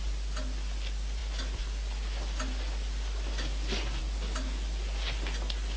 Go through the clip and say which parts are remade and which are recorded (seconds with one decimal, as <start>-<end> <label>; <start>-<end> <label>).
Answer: 0.0-5.8 recorded